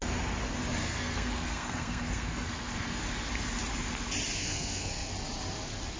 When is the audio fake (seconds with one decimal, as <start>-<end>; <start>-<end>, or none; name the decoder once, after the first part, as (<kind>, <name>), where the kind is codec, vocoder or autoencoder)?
0.8-3.0 (codec, SNAC); 4.4-5.1